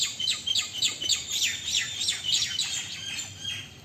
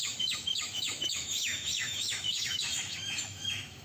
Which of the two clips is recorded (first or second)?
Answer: first